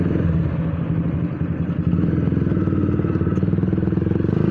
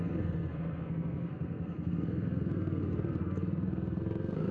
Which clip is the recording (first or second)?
first